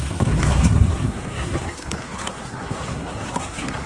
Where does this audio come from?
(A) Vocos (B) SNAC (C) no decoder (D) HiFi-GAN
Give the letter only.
B